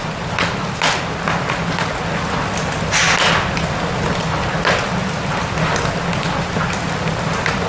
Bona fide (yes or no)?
yes